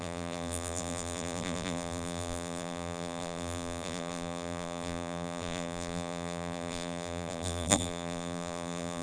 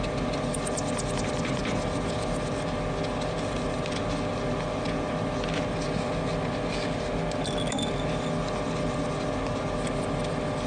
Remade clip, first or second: first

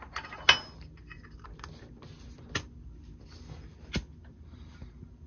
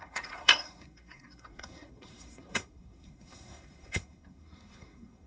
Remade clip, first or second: second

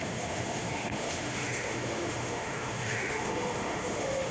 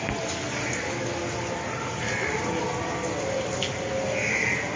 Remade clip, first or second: first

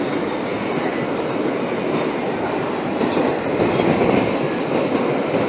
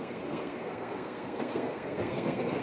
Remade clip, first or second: second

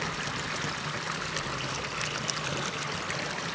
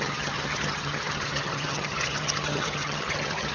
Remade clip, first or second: second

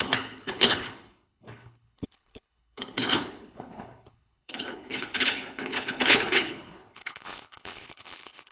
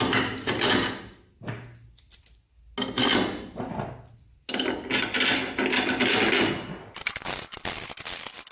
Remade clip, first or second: first